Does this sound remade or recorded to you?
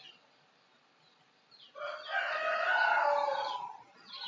recorded